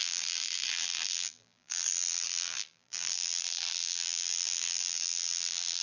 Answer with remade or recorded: remade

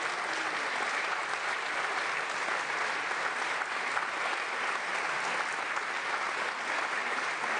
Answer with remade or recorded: recorded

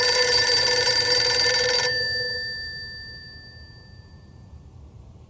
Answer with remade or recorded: remade